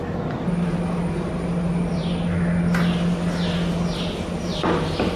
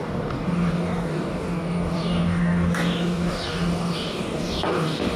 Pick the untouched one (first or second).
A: first